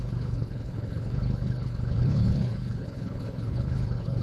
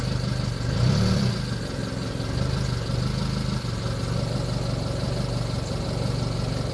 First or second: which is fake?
first